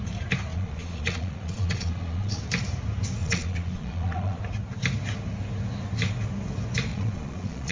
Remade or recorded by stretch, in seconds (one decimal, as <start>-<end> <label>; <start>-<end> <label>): 0.0-0.5 recorded; 0.5-2.4 remade; 2.4-3.2 recorded; 3.2-4.4 remade; 4.4-6.9 recorded; 6.9-7.7 remade